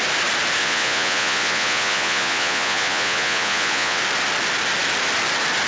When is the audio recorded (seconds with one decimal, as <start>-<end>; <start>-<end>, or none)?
0.0-0.6; 4.0-5.7